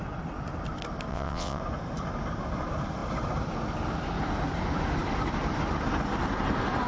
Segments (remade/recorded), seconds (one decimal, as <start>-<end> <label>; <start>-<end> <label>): 0.0-1.1 recorded; 1.1-1.6 remade; 1.6-6.9 recorded